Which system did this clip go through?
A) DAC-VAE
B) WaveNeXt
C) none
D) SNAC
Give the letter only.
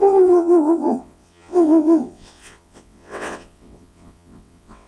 B